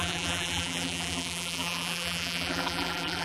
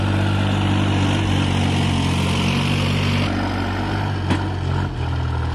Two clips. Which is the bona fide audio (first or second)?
second